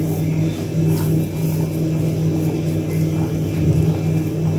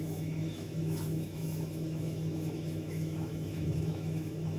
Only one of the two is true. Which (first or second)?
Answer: first